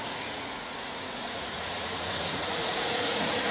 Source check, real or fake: fake